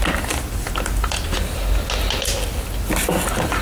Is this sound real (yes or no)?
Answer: yes